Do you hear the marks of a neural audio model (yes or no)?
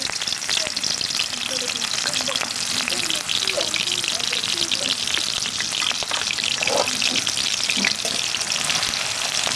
no